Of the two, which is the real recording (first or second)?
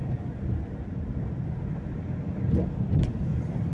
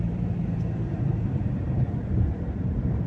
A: first